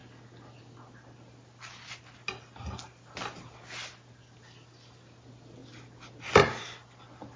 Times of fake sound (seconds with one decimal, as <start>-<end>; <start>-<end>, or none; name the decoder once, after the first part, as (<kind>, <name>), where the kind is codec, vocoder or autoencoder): none